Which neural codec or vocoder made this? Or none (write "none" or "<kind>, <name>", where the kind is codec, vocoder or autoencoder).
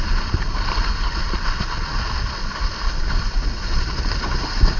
none